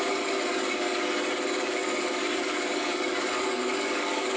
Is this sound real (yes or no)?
no